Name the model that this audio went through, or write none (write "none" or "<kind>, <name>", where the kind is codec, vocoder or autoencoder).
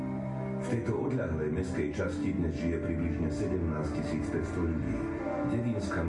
none